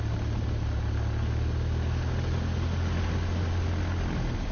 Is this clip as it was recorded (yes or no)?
yes